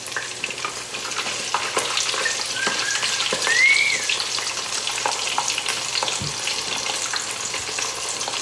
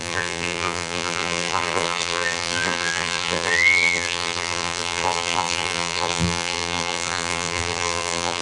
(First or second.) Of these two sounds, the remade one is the second